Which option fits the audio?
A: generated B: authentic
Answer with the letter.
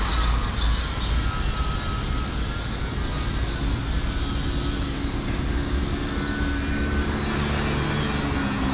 B